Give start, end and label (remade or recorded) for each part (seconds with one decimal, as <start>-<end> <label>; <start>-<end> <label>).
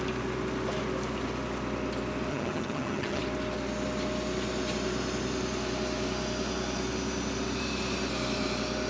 0.0-2.3 recorded; 2.3-3.2 remade; 3.2-8.9 recorded